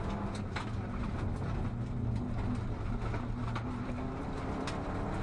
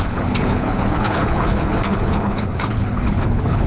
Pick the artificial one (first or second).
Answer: second